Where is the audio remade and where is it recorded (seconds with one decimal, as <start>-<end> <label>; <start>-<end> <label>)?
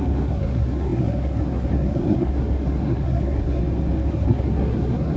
0.0-3.6 remade; 3.6-4.1 recorded; 4.1-5.2 remade